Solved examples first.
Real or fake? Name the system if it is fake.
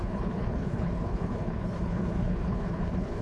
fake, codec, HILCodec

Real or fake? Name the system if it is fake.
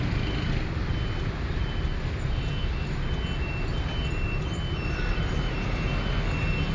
real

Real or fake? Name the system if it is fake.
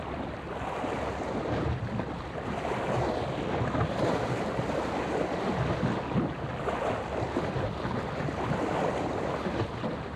real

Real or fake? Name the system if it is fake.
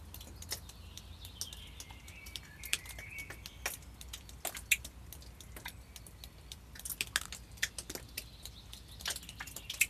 real